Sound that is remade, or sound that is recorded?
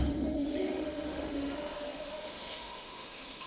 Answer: remade